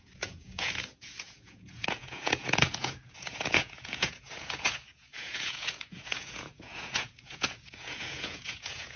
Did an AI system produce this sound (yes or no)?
yes